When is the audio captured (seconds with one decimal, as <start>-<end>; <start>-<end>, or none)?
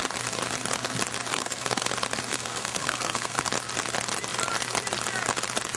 0.0-1.3; 1.9-2.3; 3.4-5.8